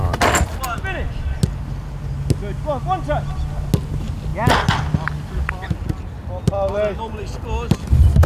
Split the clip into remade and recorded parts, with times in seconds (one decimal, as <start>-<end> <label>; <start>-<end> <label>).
0.0-8.3 recorded